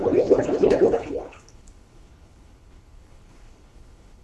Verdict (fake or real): fake